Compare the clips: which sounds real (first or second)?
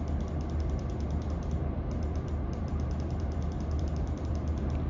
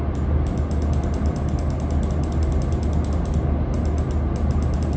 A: second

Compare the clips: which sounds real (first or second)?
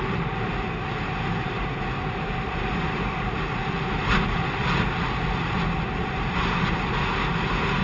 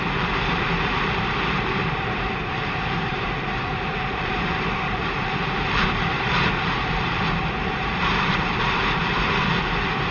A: first